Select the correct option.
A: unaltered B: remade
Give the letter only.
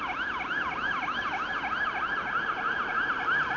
A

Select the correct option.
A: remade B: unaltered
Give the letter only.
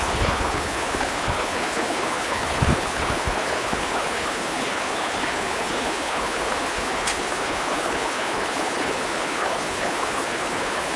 A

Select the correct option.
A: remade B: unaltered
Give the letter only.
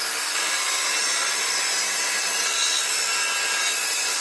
B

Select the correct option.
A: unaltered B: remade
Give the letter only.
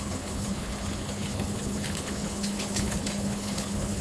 B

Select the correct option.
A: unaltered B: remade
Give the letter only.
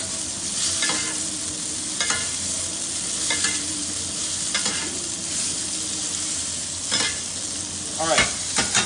A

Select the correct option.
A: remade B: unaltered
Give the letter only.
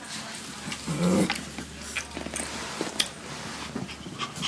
B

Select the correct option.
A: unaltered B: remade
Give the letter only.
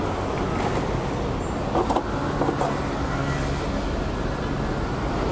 A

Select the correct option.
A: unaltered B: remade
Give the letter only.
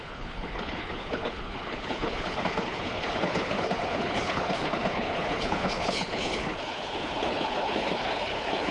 B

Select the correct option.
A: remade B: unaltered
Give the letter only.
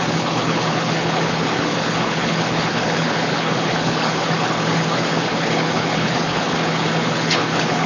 A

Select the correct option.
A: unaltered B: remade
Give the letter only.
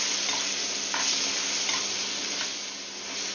A